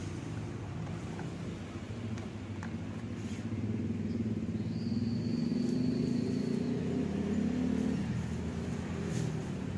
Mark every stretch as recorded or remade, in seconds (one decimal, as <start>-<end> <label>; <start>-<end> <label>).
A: 0.0-9.8 recorded